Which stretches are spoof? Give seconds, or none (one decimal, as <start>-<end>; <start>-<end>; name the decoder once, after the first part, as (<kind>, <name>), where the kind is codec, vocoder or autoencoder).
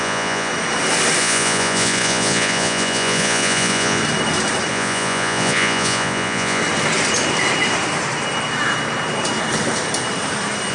0.0-0.5 (vocoder, Vocos); 1.2-4.0; 4.7-6.6